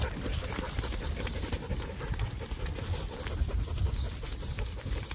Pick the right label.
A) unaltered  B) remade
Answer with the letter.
A